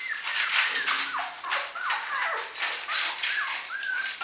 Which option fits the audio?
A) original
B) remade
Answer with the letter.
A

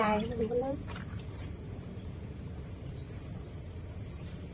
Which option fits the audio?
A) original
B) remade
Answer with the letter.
B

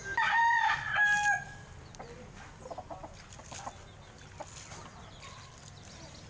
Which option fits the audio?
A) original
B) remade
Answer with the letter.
A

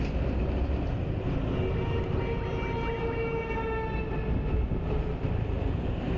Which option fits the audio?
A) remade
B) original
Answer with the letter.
B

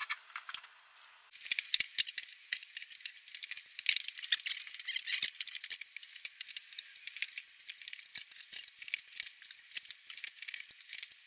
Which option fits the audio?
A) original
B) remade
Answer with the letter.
A